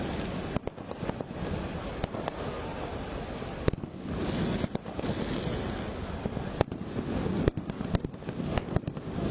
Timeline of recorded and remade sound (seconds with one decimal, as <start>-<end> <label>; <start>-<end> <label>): 0.0-9.3 recorded

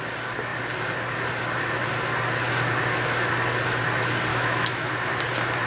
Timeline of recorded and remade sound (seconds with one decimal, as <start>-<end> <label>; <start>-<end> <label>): 0.0-4.3 recorded; 4.3-4.9 remade; 4.9-5.7 recorded

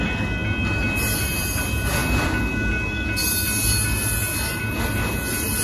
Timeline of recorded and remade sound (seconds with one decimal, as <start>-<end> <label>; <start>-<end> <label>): 0.0-5.6 recorded

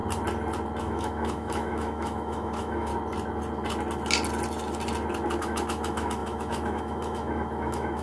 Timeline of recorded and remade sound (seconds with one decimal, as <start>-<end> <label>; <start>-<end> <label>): 0.0-0.8 recorded; 0.8-2.9 remade; 2.9-5.4 recorded; 5.4-8.0 remade